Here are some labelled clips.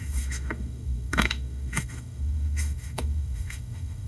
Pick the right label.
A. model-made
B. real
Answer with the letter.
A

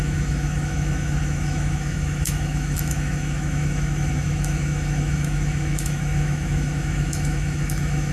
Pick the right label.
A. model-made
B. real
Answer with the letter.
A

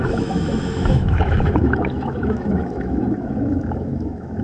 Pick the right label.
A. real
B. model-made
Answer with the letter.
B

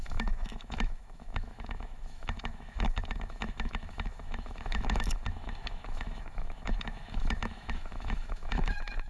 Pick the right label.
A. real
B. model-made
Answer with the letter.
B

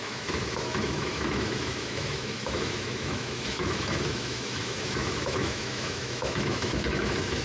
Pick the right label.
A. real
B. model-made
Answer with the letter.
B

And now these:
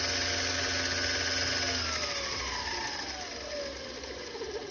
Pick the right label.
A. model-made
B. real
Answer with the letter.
B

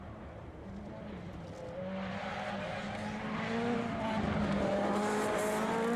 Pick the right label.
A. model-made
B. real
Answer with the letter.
B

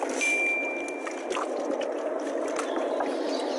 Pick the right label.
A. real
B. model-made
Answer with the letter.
A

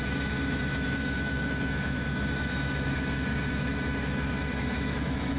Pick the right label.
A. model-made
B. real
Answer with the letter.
A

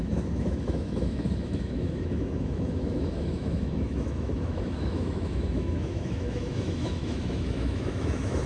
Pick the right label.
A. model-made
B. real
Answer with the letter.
A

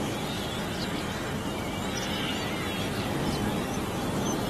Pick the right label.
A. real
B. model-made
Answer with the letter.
A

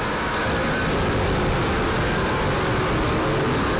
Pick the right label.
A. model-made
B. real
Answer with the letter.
B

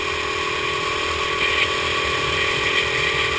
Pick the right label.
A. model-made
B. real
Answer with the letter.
B